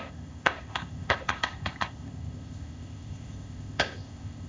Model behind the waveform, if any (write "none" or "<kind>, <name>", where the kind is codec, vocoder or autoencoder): codec, ZipCodec